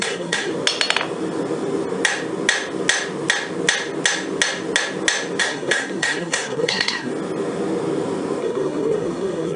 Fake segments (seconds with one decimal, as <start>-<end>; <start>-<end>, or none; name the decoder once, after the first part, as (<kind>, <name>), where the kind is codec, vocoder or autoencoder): 0.0-0.5 (codec, SNAC); 5.4-7.1; 8.4-9.6